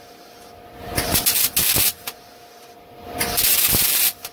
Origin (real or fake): real